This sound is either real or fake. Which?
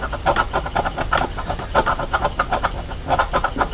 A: real